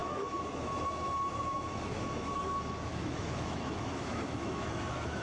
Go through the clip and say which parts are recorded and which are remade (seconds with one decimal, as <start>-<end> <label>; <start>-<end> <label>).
0.0-2.4 remade; 2.4-2.9 recorded; 2.9-5.2 remade